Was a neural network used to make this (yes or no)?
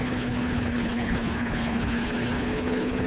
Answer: yes